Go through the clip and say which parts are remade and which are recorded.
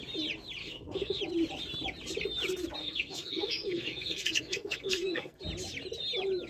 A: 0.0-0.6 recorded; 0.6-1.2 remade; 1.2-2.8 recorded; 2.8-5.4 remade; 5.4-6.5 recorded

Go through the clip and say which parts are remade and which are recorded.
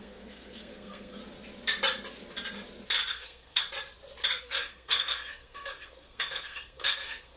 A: 0.0-1.2 remade; 1.2-3.1 recorded; 3.1-3.6 remade; 3.6-4.4 recorded; 4.4-7.4 remade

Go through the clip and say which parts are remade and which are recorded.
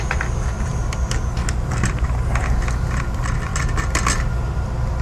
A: 0.0-5.0 recorded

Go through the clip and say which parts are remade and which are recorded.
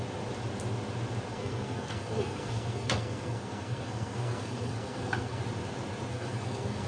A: 0.0-1.3 recorded; 1.3-5.4 remade; 5.4-6.1 recorded; 6.1-6.9 remade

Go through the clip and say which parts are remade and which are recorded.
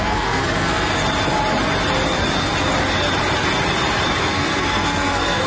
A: 0.0-0.9 remade; 0.9-4.2 recorded; 4.2-5.5 remade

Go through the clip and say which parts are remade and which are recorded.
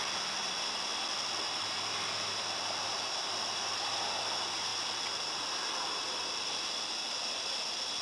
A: 0.0-8.0 recorded